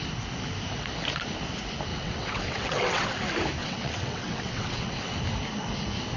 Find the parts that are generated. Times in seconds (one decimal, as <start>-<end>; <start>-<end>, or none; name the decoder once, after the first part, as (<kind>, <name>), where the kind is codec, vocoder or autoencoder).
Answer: 1.9-3.1 (vocoder, WaveNeXt); 3.6-5.2